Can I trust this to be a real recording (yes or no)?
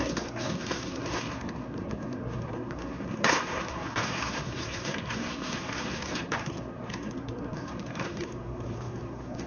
no